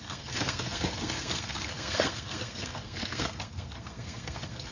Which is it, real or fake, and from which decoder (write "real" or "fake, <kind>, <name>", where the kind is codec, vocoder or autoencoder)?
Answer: fake, codec, SNAC